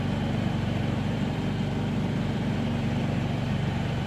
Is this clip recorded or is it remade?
remade